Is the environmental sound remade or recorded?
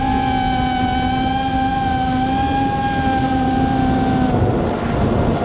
recorded